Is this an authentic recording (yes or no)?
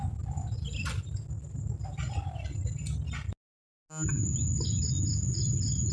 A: yes